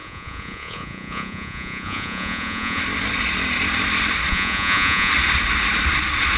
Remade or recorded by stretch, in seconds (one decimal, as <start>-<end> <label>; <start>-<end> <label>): 0.0-2.8 remade; 2.8-4.3 recorded; 4.3-5.1 remade; 5.1-6.4 recorded